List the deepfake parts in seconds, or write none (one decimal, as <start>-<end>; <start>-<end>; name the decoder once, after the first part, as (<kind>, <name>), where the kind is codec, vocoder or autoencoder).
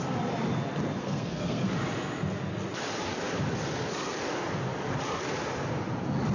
1.0-1.7 (codec, SNAC)